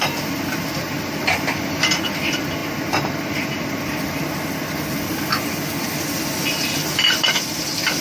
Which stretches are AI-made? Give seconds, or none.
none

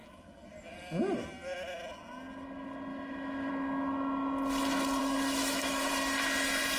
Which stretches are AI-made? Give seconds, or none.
2.9-3.5 (autoencoder, DAC-VAE); 5.0-5.9

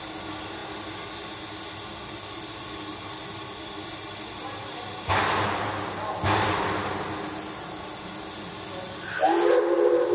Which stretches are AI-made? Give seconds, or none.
none